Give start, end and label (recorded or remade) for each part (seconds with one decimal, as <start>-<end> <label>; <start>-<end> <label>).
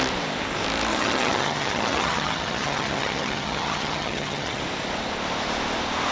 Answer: 0.0-0.9 recorded; 0.9-4.6 remade; 4.6-6.1 recorded